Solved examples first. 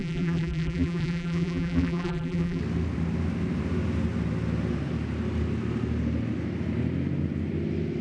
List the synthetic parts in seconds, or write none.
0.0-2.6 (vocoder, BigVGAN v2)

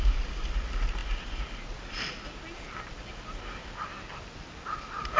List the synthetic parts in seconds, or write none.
none